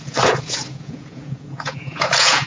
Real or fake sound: fake